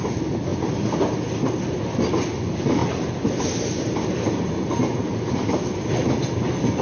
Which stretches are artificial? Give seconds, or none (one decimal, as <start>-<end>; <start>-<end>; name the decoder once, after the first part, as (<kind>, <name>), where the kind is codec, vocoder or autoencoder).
none